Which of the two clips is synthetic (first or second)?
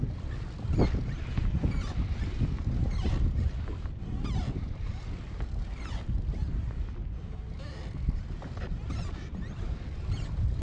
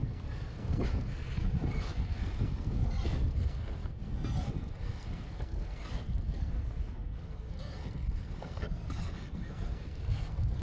second